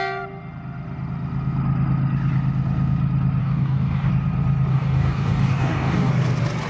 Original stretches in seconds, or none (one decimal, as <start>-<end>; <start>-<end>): 0.0-3.4; 4.1-4.7; 6.1-6.7